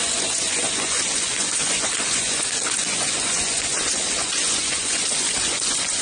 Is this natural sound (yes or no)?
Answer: no